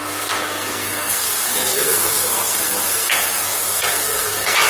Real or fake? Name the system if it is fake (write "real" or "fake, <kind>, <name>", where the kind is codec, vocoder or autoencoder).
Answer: fake, codec, SNAC